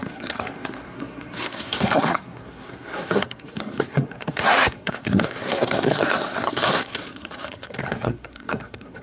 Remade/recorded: remade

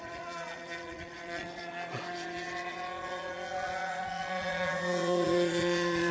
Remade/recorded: remade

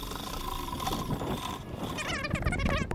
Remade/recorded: recorded